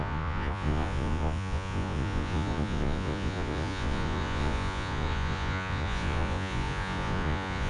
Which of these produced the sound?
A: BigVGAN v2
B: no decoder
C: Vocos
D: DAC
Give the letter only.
C